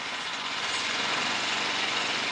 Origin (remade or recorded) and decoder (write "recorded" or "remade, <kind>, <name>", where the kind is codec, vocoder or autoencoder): remade, vocoder, Vocos